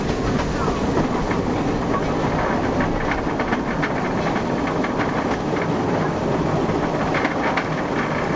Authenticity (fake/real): real